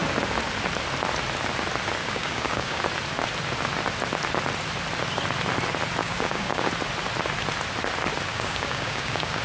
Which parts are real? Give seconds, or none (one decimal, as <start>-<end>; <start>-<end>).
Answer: 0.0-2.0; 2.8-6.0; 6.7-8.3